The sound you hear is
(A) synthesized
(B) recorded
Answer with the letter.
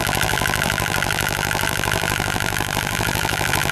A